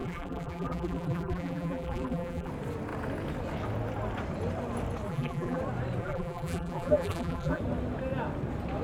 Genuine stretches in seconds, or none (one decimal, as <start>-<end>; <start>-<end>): 2.5-5.1; 5.6-6.0; 7.6-8.8